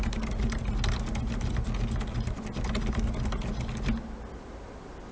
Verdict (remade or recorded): recorded